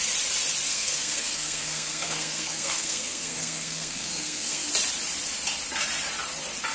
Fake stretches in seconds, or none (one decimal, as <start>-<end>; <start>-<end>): 0.7-4.7